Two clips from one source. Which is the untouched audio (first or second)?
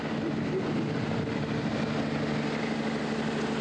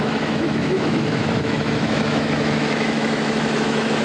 first